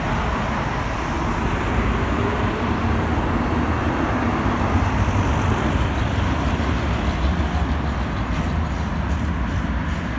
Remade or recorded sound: recorded